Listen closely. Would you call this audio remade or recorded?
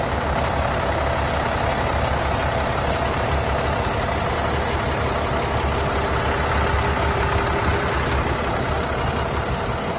recorded